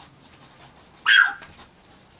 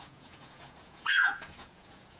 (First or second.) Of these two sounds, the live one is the first